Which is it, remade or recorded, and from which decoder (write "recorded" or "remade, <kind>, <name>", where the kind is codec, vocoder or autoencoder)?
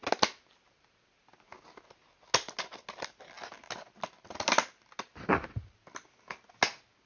recorded